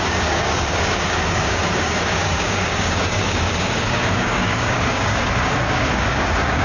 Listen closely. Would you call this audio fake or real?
fake